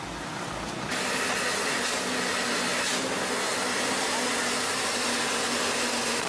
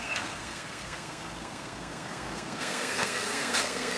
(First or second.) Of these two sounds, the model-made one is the second